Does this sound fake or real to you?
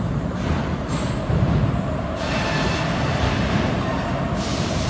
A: fake